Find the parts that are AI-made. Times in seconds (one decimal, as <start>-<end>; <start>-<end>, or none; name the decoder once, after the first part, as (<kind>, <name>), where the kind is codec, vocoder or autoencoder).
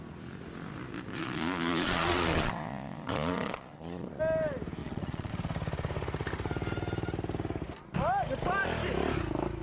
1.1-4.1 (vocoder, Vocos); 4.8-5.3